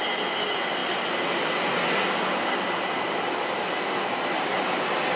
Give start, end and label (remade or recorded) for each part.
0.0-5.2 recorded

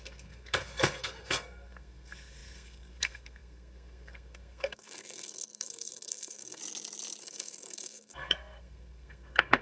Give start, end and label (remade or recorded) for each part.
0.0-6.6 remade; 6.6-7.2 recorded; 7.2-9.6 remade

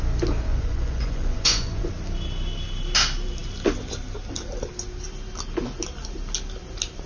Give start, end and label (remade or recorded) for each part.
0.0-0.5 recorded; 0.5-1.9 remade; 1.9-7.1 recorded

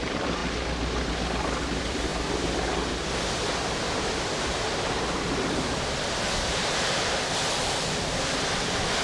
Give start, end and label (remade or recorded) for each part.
0.0-0.4 remade; 0.4-1.6 recorded; 1.6-2.1 remade; 2.1-5.3 recorded; 5.3-9.0 remade

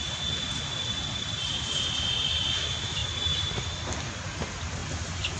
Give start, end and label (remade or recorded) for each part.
0.0-5.4 recorded